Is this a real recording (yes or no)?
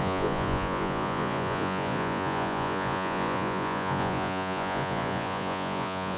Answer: no